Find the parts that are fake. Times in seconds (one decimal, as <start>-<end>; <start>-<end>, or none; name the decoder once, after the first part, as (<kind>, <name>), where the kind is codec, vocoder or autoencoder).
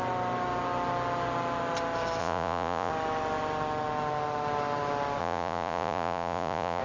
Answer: 2.2-2.9 (vocoder, Vocos); 5.2-6.8